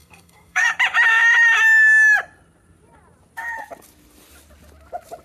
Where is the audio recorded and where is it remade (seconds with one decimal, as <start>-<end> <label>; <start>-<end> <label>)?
0.0-0.7 remade; 0.7-5.2 recorded